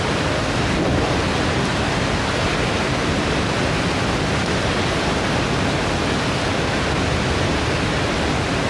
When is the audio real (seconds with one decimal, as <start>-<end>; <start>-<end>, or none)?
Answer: 0.0-8.7